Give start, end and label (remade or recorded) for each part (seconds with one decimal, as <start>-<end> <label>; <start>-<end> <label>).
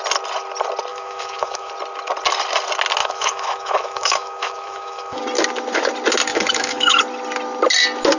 0.0-0.9 recorded; 0.9-1.7 remade; 1.7-3.0 recorded; 3.0-5.2 remade; 5.2-6.3 recorded; 6.3-7.0 remade; 7.0-8.2 recorded